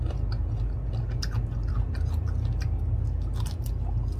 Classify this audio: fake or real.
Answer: real